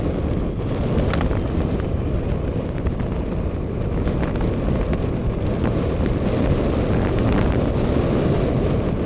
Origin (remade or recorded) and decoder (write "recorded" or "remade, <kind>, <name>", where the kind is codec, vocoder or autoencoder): recorded